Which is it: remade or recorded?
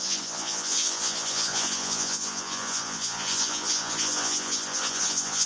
remade